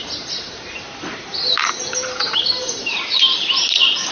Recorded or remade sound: remade